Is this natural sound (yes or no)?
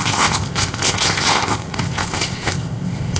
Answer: no